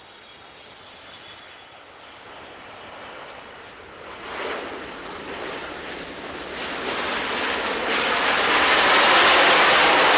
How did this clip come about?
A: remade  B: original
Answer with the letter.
B